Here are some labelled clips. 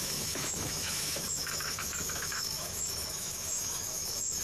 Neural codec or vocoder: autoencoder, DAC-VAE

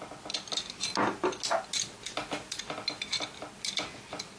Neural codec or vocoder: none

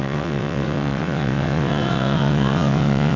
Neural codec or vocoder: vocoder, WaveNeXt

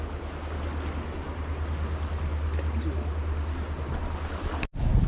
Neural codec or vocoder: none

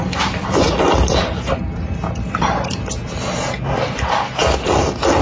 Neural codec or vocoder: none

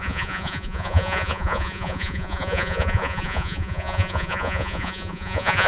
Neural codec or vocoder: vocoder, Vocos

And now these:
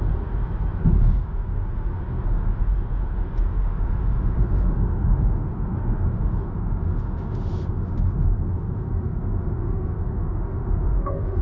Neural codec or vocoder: autoencoder, DAC-VAE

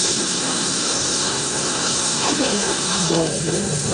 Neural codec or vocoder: codec, SNAC